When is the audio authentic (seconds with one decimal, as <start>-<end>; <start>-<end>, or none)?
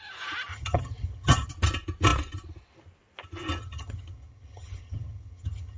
0.0-0.5; 1.5-3.6